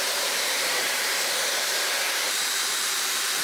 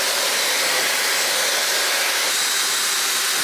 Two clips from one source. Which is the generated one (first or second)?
first